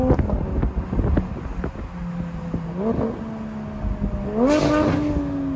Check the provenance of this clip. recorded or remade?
recorded